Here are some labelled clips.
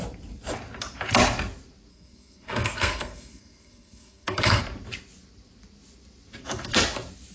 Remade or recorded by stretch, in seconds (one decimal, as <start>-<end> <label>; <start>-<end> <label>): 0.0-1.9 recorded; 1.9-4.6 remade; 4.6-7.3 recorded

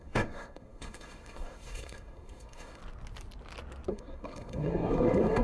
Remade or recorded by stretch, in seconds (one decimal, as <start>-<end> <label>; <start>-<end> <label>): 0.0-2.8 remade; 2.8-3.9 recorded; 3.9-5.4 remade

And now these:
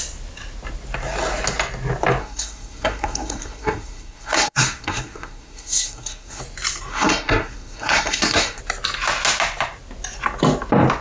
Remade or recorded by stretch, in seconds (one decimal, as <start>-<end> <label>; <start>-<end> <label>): 0.0-2.2 recorded; 2.2-6.4 remade; 6.4-6.9 recorded; 6.9-8.6 remade; 8.6-11.0 recorded

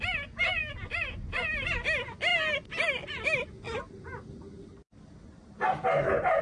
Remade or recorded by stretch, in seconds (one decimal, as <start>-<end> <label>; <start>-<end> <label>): 0.0-6.4 recorded

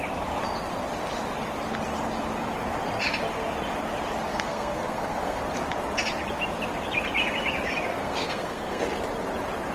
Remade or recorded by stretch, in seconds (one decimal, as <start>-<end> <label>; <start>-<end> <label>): 0.0-4.3 recorded; 4.3-5.4 remade; 5.4-7.9 recorded; 7.9-8.8 remade; 8.8-9.7 recorded

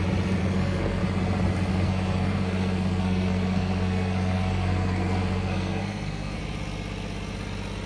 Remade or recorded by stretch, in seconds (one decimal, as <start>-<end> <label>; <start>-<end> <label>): 0.0-0.4 recorded; 0.4-1.0 remade; 1.0-1.7 recorded; 1.7-6.4 remade; 6.4-7.9 recorded